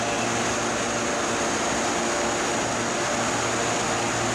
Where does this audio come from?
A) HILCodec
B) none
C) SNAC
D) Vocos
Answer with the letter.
B